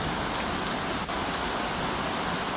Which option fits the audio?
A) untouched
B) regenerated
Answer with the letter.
A